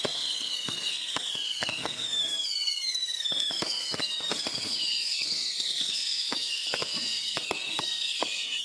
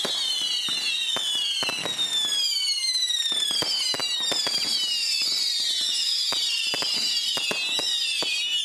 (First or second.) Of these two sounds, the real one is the second